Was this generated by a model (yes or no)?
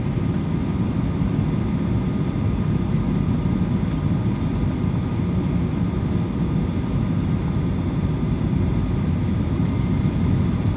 no